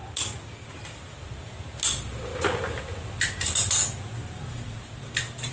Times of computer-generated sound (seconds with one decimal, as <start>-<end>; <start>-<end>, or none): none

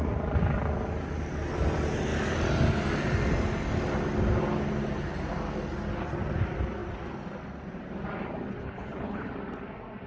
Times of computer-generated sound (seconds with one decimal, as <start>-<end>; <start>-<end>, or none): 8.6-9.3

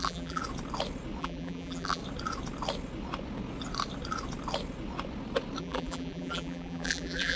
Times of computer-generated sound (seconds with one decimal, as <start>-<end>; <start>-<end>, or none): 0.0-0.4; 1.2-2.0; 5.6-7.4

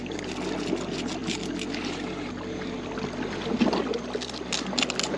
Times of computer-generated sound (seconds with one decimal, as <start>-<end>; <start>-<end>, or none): none

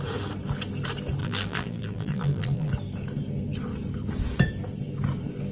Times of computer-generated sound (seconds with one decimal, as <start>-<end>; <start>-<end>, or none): 1.2-2.7

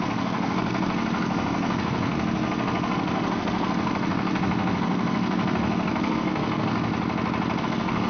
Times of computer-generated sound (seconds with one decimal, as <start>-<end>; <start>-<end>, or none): 0.0-6.9; 7.6-8.1